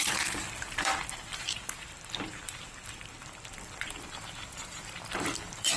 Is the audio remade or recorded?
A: remade